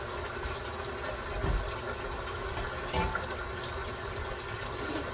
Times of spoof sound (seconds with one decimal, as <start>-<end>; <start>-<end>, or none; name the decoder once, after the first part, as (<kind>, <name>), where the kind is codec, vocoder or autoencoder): none